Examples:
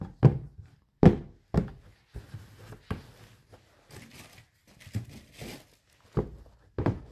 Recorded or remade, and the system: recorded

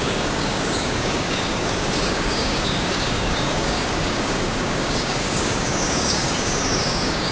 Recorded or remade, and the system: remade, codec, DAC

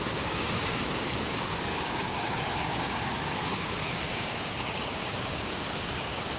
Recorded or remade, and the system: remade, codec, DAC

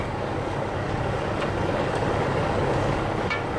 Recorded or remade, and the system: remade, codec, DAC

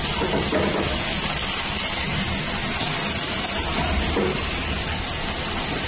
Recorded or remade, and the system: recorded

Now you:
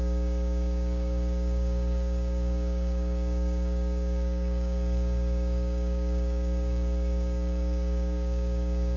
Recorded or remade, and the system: remade, codec, DAC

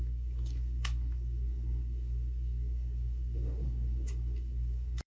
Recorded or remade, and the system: remade, codec, DAC